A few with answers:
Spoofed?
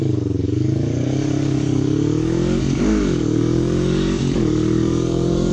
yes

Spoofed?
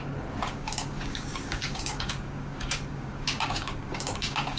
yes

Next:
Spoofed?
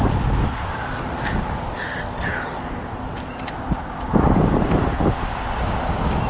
no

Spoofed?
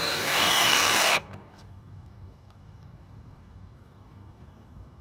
yes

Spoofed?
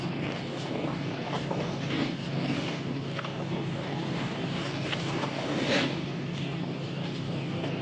yes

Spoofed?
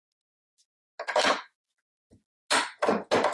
no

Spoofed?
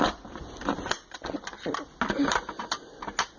no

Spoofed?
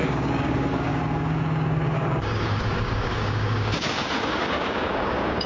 yes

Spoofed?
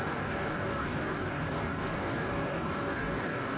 yes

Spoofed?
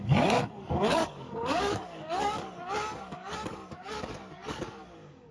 yes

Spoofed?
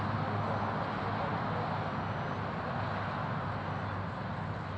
no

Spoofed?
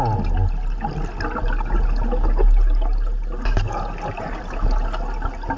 no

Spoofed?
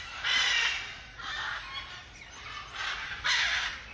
no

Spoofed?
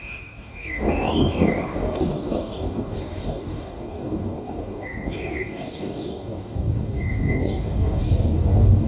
yes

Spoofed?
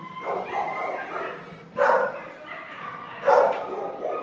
no